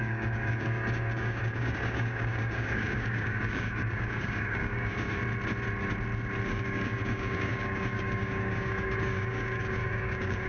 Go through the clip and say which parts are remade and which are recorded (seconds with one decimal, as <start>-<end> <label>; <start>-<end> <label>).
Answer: 0.0-5.2 remade; 5.2-6.5 recorded; 6.5-10.5 remade